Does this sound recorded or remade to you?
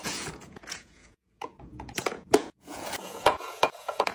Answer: remade